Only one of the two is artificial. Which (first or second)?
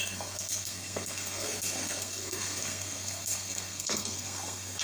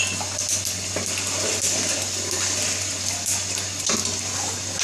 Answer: first